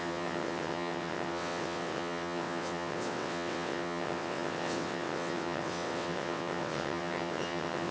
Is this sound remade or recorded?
remade